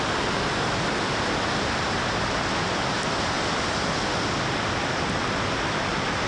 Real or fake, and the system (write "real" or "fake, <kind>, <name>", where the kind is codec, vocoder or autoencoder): real